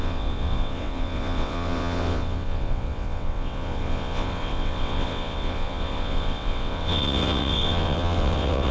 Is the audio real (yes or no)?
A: no